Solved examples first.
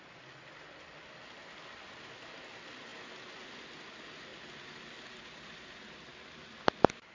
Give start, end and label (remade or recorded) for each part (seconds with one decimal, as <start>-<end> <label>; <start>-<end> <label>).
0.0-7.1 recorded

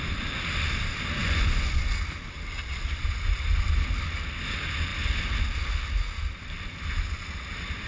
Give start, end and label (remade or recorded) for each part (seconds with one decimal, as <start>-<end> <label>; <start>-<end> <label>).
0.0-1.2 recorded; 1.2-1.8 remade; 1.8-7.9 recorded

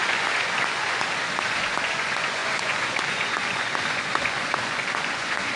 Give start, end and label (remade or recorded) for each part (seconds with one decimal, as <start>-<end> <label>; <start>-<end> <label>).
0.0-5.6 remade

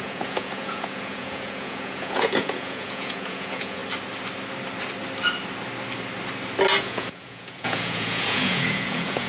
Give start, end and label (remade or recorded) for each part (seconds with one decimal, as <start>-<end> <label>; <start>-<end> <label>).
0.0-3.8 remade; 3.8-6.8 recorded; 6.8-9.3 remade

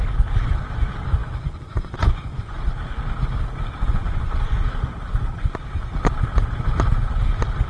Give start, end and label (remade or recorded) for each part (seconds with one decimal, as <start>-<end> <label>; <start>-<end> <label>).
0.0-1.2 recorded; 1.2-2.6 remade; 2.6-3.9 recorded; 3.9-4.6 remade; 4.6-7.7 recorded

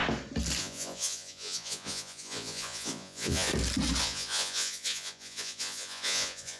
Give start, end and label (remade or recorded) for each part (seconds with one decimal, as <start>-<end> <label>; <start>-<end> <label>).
0.0-0.6 recorded; 0.6-3.5 remade; 3.5-4.0 recorded; 4.0-6.6 remade

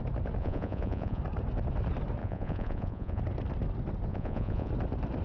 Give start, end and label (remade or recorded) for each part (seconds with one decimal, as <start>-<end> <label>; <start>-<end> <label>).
0.0-0.4 recorded; 0.4-1.2 remade; 1.2-2.2 recorded; 2.2-3.2 remade; 3.2-4.1 recorded; 4.1-4.7 remade; 4.7-5.2 recorded